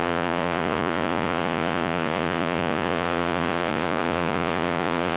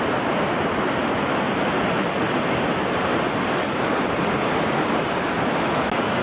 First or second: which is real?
second